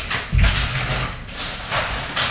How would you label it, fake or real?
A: real